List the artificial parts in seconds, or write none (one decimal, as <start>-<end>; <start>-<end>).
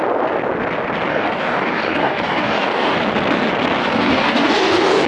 1.1-3.0; 3.8-5.1